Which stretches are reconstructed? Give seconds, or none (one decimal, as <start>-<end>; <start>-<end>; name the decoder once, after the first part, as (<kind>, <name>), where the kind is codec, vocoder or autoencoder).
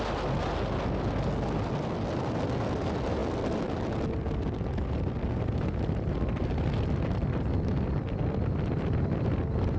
none